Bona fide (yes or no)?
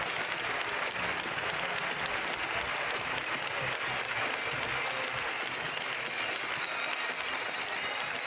yes